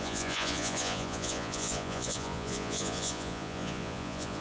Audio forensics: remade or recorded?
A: remade